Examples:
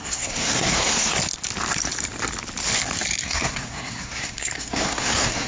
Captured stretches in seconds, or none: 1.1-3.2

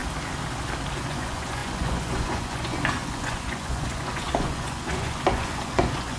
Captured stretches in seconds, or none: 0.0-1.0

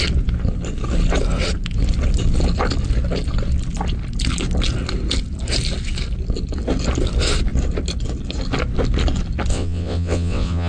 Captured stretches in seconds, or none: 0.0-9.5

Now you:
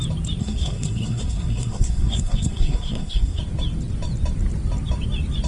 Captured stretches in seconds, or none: 0.0-0.4; 3.4-5.5

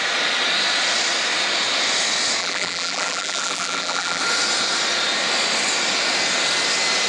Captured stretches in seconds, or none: 0.0-2.4; 4.2-7.1

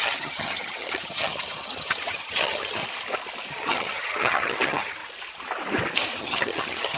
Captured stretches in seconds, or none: 2.8-3.5; 5.0-6.2

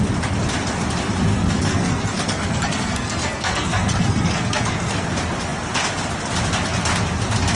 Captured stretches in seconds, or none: 0.0-1.3; 5.1-7.6

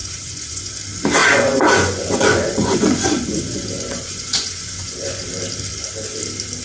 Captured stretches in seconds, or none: 0.7-1.2; 5.2-6.6